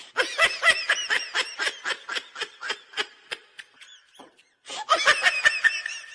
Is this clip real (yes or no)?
yes